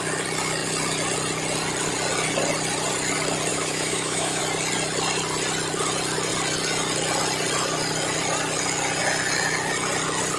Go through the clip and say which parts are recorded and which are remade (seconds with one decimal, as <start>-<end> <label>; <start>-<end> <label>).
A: 0.0-3.5 recorded; 3.5-4.4 remade; 4.4-10.4 recorded

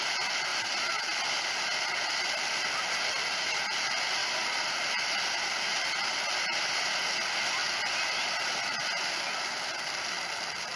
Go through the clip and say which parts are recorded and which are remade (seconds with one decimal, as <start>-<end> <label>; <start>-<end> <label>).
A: 0.0-10.8 recorded